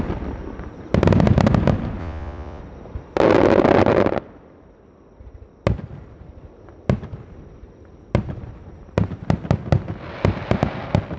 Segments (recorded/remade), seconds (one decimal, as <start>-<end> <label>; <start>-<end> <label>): 0.0-2.0 recorded; 2.0-2.6 remade; 2.6-11.2 recorded